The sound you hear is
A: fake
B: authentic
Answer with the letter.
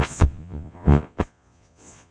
A